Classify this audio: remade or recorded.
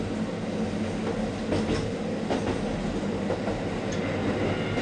recorded